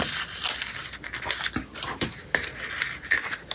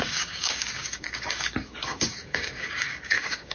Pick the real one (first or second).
first